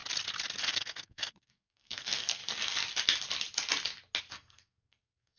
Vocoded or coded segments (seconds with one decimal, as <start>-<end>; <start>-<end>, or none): 0.6-2.4; 4.3-5.4